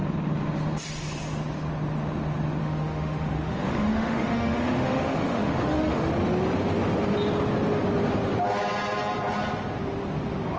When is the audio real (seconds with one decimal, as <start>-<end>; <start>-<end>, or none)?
0.0-2.6; 6.1-10.6